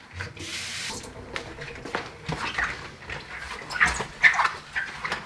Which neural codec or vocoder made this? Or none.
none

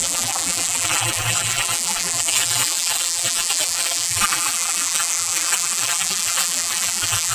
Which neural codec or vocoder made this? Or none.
vocoder, BigVGAN v2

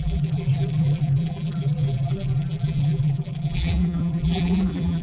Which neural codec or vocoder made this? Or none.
vocoder, BigVGAN v2